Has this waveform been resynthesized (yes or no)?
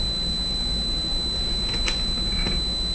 no